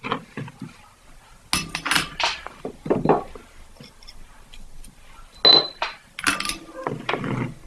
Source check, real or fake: real